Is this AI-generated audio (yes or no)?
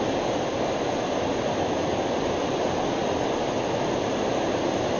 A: no